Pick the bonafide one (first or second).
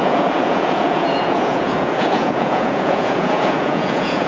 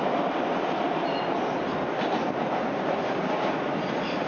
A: second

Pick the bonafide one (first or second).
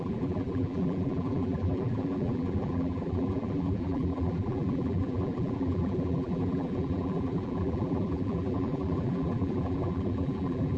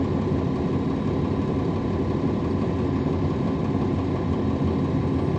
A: second